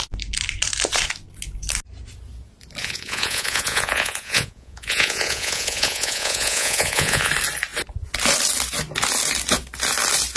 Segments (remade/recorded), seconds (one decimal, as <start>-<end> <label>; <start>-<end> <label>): 0.0-2.8 recorded; 2.8-7.3 remade; 7.3-10.4 recorded